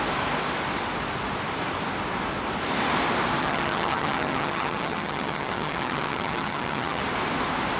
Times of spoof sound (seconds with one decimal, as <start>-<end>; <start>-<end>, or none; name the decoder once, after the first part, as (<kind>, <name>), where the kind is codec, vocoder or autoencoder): 3.4-7.0 (vocoder, HiFi-GAN)